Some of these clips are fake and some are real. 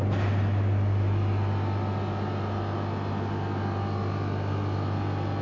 real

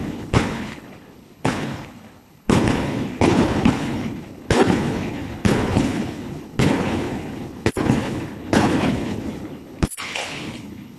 fake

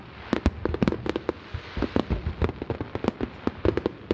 real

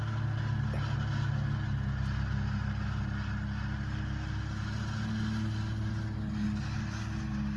real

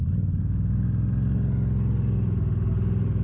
real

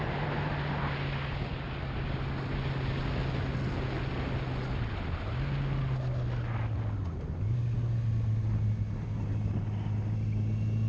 real